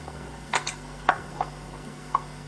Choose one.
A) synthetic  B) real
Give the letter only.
A